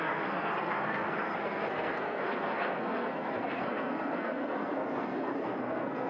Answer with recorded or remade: remade